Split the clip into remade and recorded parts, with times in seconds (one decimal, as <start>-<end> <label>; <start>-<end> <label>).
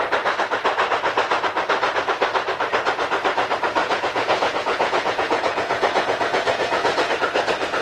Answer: 0.0-3.8 recorded; 3.8-7.1 remade; 7.1-7.8 recorded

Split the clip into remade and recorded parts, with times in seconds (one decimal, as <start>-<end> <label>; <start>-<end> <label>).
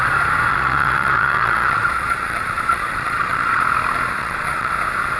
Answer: 0.0-0.5 recorded; 0.5-3.6 remade; 3.6-4.2 recorded; 4.2-4.7 remade; 4.7-5.2 recorded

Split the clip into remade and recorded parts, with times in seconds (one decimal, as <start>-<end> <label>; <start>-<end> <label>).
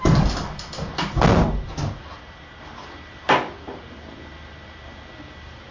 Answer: 0.0-5.7 recorded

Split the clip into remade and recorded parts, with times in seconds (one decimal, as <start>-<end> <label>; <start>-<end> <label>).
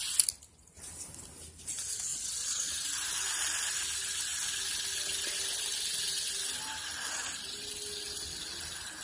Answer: 0.0-2.1 recorded; 2.1-2.7 remade; 2.7-9.0 recorded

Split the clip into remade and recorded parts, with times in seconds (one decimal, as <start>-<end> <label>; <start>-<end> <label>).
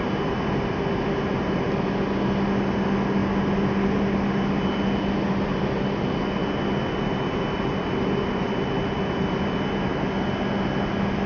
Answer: 0.0-11.3 recorded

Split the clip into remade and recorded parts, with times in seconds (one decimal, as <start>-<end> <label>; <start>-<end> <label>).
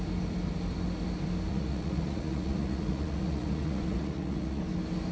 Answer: 0.0-1.5 recorded; 1.5-4.6 remade; 4.6-5.1 recorded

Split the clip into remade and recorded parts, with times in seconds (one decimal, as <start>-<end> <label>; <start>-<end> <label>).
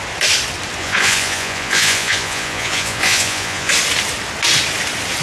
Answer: 0.0-0.8 recorded; 0.8-3.7 remade; 3.7-5.2 recorded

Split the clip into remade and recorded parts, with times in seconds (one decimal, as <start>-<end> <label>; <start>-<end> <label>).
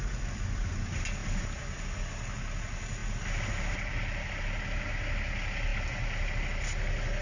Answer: 0.0-7.2 recorded